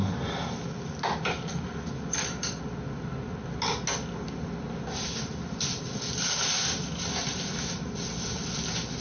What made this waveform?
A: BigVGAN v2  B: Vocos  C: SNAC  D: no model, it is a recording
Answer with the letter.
D